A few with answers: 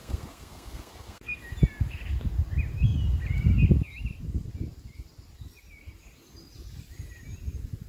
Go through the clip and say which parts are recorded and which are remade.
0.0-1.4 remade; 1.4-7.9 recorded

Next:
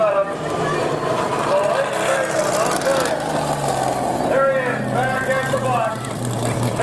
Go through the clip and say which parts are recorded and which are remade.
0.0-2.9 remade; 2.9-5.8 recorded; 5.8-6.8 remade

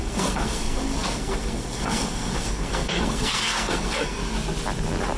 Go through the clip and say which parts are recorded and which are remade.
0.0-4.2 remade; 4.2-5.2 recorded

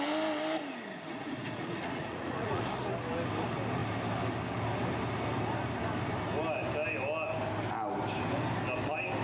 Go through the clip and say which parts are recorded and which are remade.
0.0-1.2 recorded; 1.2-2.6 remade; 2.6-9.2 recorded

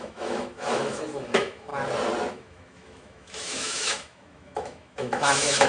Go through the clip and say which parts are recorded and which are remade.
0.0-1.7 remade; 1.7-2.3 recorded; 2.3-5.7 remade

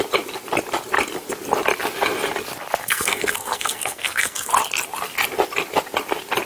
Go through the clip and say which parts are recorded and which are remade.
0.0-2.8 recorded; 2.8-4.5 remade; 4.5-6.5 recorded

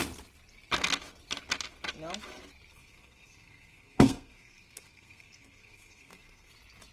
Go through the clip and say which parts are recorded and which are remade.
0.0-2.7 recorded; 2.7-6.5 remade; 6.5-6.9 recorded